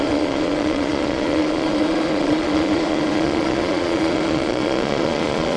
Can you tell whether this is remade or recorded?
remade